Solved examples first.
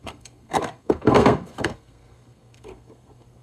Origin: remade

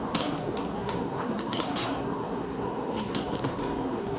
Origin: remade